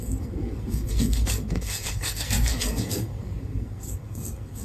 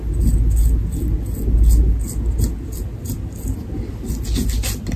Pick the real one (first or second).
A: second